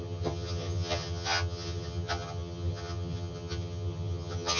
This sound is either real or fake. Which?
fake